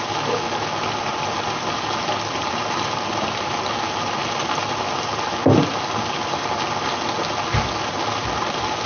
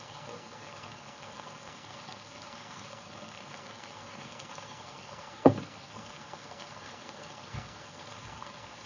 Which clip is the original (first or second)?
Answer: first